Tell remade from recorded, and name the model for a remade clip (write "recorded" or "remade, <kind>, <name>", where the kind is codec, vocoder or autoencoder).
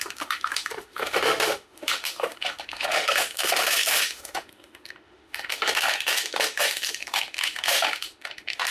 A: remade, autoencoder, DAC-VAE